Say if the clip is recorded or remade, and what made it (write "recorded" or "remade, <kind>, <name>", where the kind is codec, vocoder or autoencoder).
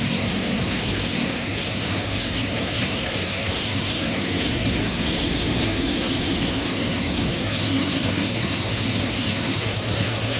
remade, codec, SNAC